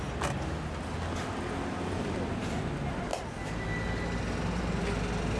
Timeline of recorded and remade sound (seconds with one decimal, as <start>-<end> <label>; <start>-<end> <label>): 0.0-5.4 recorded